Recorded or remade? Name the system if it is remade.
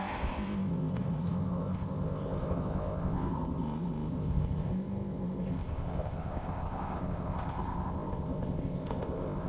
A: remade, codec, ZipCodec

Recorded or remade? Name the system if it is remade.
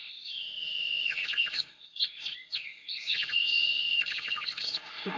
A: remade, codec, ZipCodec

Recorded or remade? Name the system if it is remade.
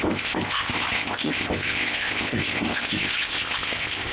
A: remade, codec, ZipCodec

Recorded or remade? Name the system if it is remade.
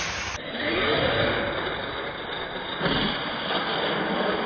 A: recorded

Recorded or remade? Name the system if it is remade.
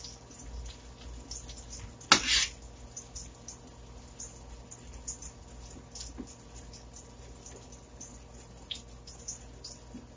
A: recorded